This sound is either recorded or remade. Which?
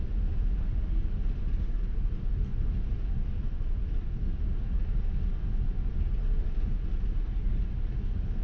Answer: recorded